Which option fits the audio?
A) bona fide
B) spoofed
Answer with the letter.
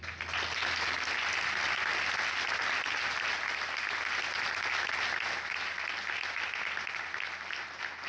A